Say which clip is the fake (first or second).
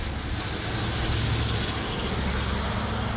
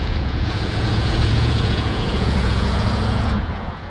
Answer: second